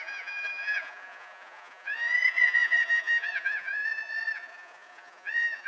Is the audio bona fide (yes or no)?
no